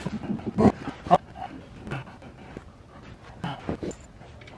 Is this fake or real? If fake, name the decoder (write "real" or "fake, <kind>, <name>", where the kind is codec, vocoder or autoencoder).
real